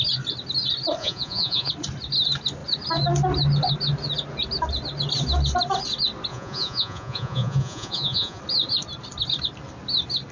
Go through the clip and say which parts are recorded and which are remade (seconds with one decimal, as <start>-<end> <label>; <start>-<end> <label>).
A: 0.0-1.0 recorded; 1.0-1.7 remade; 1.7-6.3 recorded; 6.3-8.4 remade; 8.4-10.3 recorded